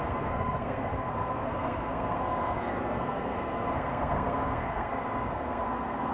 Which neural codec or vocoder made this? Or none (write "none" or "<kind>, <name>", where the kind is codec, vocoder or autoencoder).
codec, SNAC